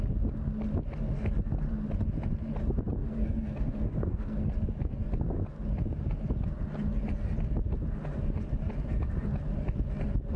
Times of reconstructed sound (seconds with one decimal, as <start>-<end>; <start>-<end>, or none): 3.0-4.5